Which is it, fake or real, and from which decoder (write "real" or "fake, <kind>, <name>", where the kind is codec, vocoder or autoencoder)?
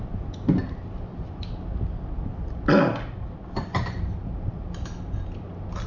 real